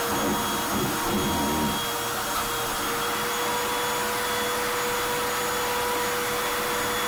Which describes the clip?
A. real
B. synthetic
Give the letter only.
A